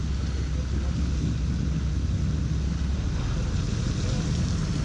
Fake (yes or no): no